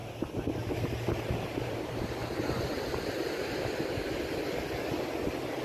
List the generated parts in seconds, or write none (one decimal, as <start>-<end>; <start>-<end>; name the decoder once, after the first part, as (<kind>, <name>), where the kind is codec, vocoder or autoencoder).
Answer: none